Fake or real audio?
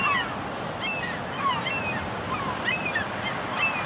real